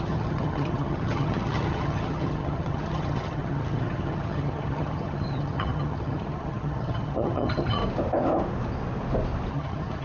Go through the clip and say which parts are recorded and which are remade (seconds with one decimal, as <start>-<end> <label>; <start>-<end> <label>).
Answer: 0.0-7.8 remade; 7.8-9.5 recorded; 9.5-10.0 remade